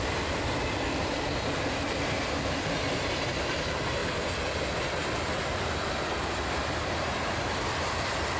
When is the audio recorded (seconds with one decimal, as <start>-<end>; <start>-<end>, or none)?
0.0-8.4